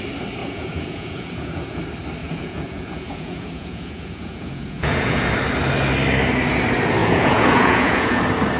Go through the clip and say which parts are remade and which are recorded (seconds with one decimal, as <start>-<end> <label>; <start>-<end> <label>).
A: 0.0-0.4 recorded; 0.4-1.8 remade; 1.8-2.2 recorded; 2.2-5.3 remade; 5.3-7.0 recorded; 7.0-8.2 remade; 8.2-8.6 recorded